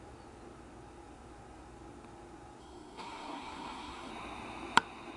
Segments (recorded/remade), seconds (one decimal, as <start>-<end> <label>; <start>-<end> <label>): 0.0-2.6 recorded; 2.6-4.1 remade; 4.1-5.2 recorded